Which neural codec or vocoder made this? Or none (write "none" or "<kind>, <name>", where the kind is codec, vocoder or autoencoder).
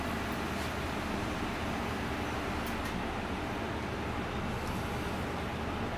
none